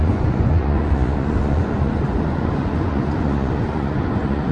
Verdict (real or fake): fake